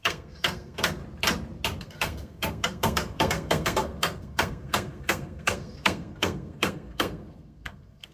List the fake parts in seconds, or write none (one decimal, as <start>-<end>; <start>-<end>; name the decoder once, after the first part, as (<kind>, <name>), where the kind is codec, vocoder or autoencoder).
0.0-1.0 (codec, SNAC); 1.8-8.1